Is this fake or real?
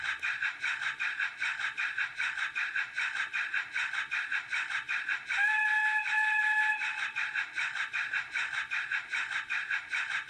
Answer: real